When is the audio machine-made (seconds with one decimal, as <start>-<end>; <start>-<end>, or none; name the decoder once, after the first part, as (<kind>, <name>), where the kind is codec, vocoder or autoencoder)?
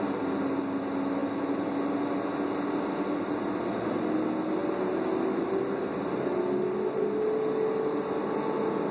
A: none